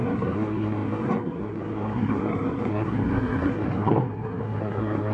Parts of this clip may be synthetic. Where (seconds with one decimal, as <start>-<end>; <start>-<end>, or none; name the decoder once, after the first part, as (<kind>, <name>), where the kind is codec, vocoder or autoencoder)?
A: 0.0-5.1 (codec, SNAC)